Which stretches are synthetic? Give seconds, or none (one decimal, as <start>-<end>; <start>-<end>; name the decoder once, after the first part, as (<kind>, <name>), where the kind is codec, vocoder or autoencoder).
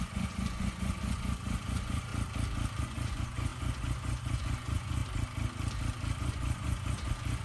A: 0.0-2.1 (vocoder, Vocos); 2.8-5.0; 6.2-7.4